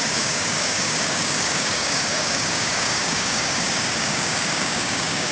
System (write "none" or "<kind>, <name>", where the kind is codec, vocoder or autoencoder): codec, DAC